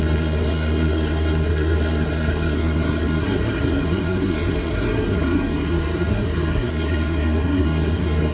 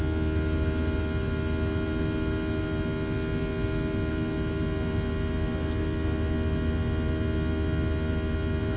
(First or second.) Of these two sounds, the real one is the second